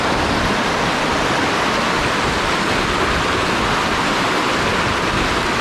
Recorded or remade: recorded